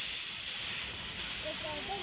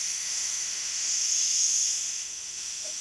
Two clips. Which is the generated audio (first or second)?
second